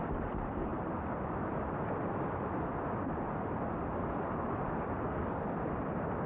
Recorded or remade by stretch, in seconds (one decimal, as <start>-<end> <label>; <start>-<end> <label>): 0.0-6.3 recorded